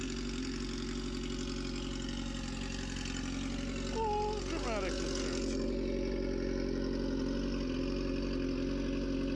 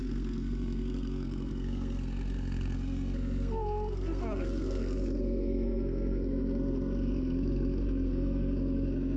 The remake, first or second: second